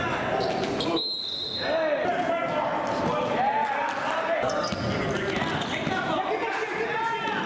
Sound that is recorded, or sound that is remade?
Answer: recorded